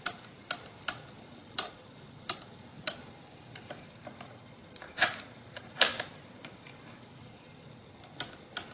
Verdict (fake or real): real